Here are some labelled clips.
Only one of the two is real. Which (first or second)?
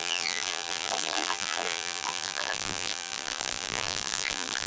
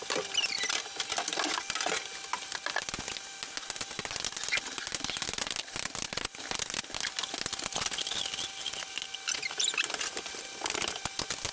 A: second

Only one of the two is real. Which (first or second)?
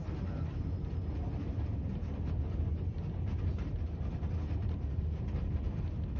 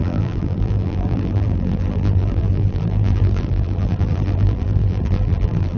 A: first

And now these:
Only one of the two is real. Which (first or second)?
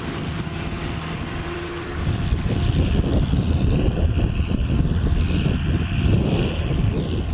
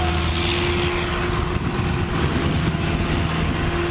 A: second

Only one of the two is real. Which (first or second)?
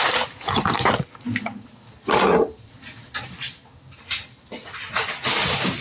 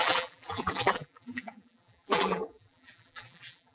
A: first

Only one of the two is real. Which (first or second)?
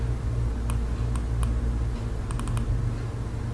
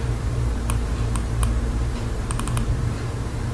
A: first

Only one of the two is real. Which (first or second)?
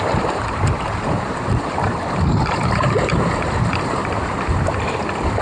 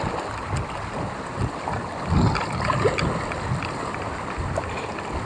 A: second